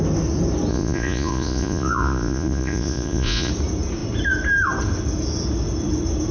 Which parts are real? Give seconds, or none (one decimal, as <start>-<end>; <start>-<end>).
0.0-0.7; 3.5-6.3